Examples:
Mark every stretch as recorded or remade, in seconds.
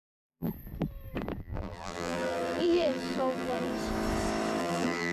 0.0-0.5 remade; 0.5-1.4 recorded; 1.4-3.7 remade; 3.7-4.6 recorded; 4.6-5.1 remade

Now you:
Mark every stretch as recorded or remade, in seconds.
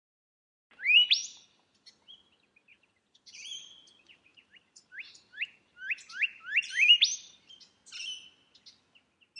0.0-1.2 recorded; 1.2-1.9 remade; 1.9-2.7 recorded; 2.7-3.7 remade; 3.7-4.3 recorded; 4.3-7.0 remade; 7.0-9.4 recorded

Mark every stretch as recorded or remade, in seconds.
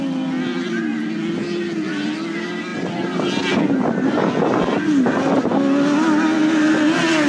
0.0-7.3 recorded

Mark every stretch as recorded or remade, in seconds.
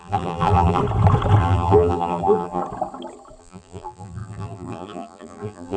0.0-0.8 remade; 0.8-1.4 recorded; 1.4-2.6 remade; 2.6-3.4 recorded; 3.4-5.8 remade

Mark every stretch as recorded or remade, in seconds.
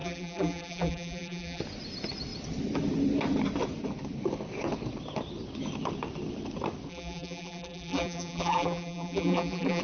0.0-1.6 remade; 1.6-6.9 recorded; 6.9-9.8 remade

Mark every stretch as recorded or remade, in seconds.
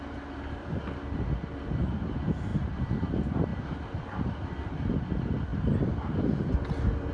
0.0-2.5 recorded; 2.5-3.1 remade; 3.1-3.5 recorded; 3.5-4.9 remade; 4.9-7.1 recorded